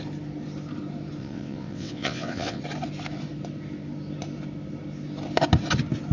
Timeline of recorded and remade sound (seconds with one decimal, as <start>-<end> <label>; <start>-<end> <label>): 0.0-1.2 recorded; 1.2-2.6 remade; 2.6-6.1 recorded